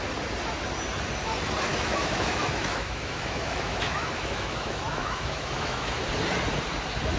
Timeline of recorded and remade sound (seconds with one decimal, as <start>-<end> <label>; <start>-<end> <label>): 0.0-1.7 recorded; 1.7-6.0 remade; 6.0-7.2 recorded